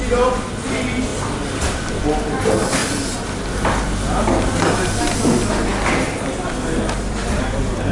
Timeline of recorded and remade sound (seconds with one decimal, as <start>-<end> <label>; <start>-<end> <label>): 0.0-7.9 recorded